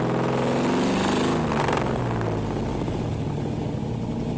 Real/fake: real